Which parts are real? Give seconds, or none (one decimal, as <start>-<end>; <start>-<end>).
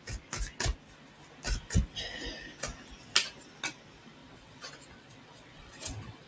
0.0-4.2